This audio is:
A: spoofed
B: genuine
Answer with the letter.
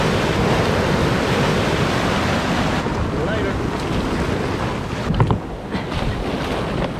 B